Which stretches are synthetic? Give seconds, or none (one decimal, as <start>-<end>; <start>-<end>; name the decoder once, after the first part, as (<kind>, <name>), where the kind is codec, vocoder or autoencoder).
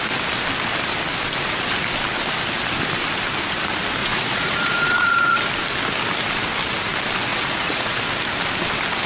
4.0-5.4 (vocoder, Vocos); 7.3-8.0